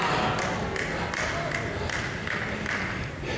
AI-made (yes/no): no